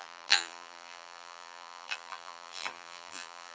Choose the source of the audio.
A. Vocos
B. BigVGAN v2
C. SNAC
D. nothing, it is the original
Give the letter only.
B